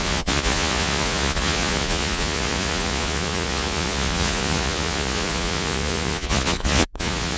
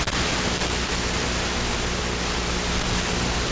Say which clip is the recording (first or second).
second